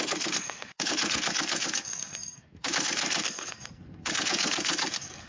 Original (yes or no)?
no